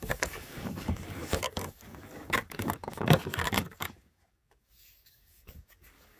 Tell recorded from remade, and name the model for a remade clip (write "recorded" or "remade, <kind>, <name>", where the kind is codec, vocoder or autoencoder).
remade, codec, DAC